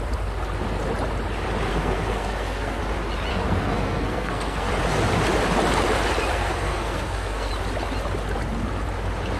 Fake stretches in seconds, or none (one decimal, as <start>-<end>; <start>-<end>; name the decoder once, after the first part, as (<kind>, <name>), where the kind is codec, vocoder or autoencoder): 1.7-2.8 (codec, SNAC); 3.3-4.7; 6.3-7.5